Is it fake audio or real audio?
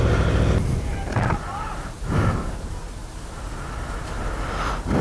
real